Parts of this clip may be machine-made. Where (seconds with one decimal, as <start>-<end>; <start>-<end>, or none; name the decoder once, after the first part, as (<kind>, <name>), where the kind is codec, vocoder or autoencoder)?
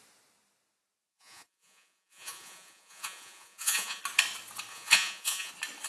1.1-4.0 (vocoder, Vocos); 4.7-5.5